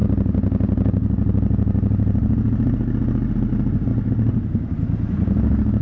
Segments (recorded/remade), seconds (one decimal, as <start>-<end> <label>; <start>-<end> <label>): 0.0-5.8 recorded